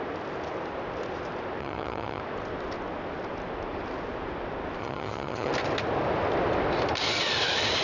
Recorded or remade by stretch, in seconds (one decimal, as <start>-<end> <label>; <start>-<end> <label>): 0.0-1.6 recorded; 1.6-2.2 remade; 2.2-4.8 recorded; 4.8-5.5 remade; 5.5-7.8 recorded